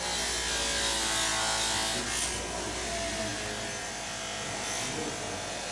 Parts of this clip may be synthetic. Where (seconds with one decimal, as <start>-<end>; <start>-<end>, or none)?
none